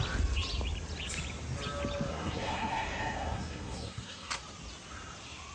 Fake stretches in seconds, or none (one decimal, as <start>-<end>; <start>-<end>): 2.1-4.4